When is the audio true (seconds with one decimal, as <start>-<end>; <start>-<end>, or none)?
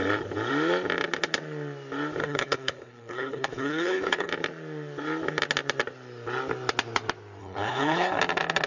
0.0-2.2; 4.3-7.4; 8.2-8.7